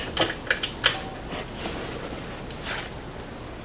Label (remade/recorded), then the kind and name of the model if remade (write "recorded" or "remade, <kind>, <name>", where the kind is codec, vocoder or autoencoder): recorded